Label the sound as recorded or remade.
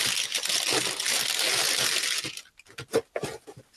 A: recorded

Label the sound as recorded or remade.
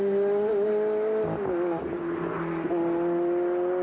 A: recorded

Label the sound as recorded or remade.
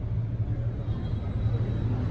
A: recorded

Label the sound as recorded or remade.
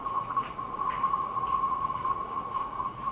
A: remade